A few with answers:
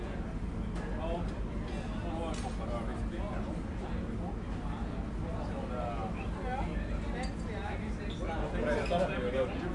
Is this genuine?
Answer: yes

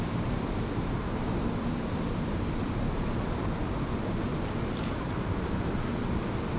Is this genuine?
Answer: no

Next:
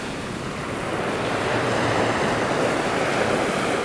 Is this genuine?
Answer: yes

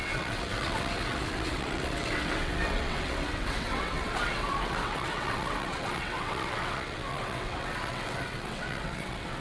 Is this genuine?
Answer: no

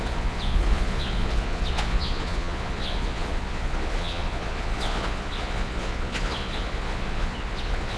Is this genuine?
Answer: no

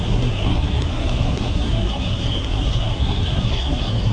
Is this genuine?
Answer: no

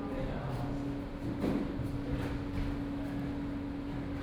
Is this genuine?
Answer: yes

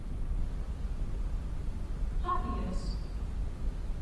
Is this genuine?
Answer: yes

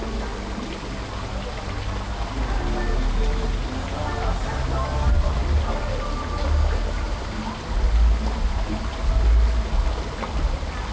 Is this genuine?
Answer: yes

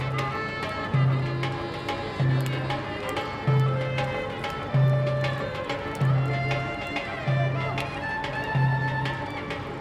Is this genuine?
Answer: yes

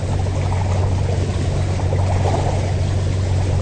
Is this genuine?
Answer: yes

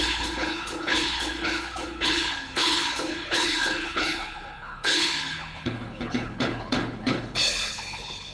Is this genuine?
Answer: no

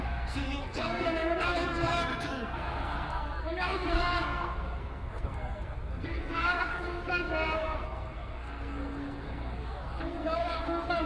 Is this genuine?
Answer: no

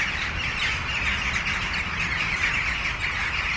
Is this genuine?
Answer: yes